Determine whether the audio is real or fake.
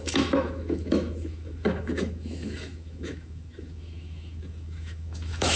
fake